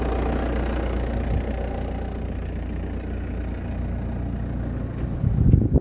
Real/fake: real